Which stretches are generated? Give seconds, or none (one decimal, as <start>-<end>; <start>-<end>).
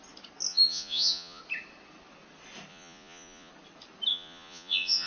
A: 0.5-1.4; 2.7-3.5; 4.1-5.1